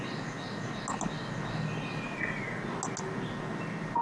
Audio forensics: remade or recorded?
recorded